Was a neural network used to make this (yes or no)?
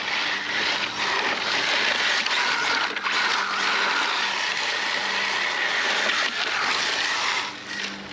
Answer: no